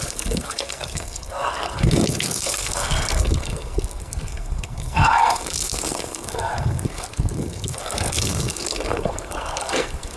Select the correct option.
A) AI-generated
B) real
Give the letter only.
A